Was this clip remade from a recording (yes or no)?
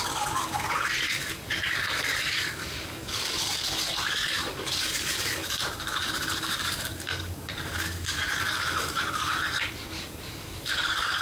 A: yes